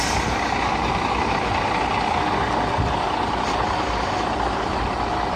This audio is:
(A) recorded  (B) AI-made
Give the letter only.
A